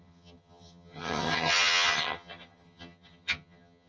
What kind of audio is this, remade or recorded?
remade